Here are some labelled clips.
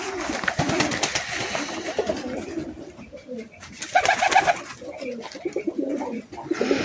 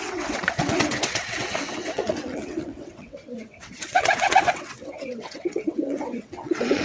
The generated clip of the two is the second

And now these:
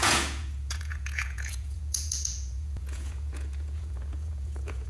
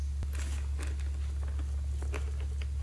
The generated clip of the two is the first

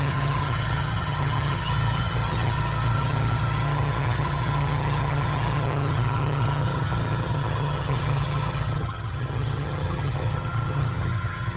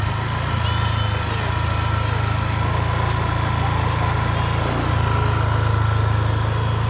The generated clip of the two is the first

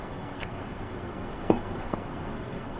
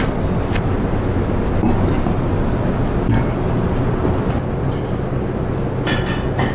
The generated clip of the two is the first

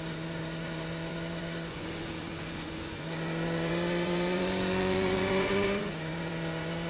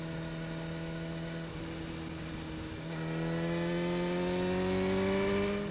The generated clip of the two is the first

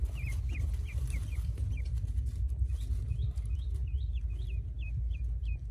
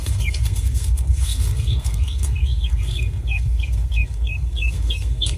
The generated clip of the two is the second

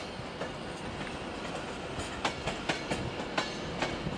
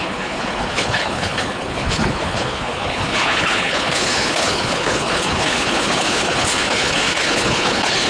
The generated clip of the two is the second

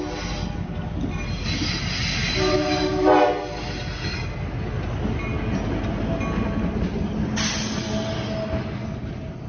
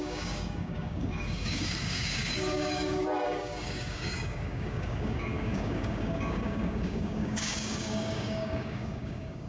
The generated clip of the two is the second